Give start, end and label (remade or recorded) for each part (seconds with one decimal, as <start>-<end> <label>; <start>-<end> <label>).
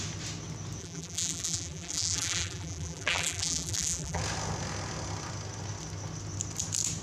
0.0-0.8 recorded; 0.8-4.2 remade; 4.2-7.0 recorded